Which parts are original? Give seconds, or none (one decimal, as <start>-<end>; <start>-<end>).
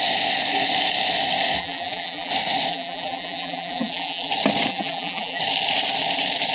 0.0-1.6; 2.3-2.7; 4.3-4.7; 5.4-6.5